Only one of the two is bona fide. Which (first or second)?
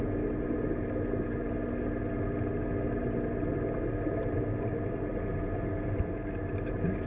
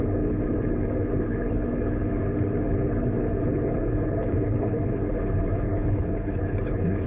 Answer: first